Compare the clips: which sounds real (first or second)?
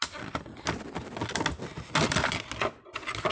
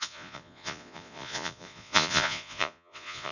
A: first